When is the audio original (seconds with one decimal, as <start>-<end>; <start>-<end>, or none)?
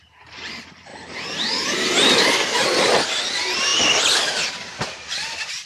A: 0.0-5.7